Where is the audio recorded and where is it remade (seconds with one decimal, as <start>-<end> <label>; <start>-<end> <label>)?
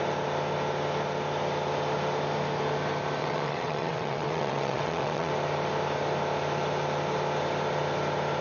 0.0-3.2 recorded; 3.2-5.3 remade; 5.3-8.4 recorded